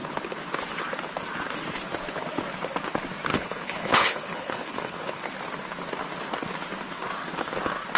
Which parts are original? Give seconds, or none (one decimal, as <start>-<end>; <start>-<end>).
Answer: 0.0-3.3; 5.2-8.0

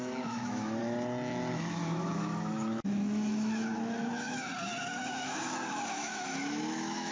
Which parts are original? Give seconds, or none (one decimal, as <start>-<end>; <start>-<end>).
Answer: 0.8-1.5; 4.5-5.1

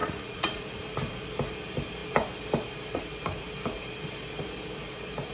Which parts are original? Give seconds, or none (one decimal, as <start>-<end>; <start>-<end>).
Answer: 0.6-5.3